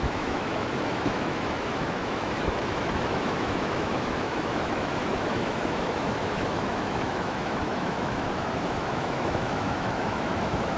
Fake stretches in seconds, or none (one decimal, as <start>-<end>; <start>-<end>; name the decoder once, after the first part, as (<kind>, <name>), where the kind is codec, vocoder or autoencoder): 0.0-10.8 (autoencoder, DAC-VAE)